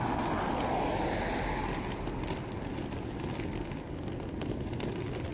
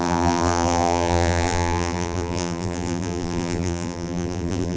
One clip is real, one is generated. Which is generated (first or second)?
second